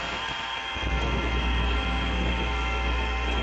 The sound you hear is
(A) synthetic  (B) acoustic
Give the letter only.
A